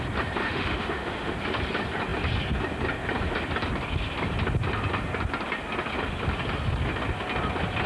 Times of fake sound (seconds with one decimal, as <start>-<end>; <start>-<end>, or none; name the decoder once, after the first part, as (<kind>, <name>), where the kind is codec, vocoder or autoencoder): 0.4-1.3 (autoencoder, DAC-VAE)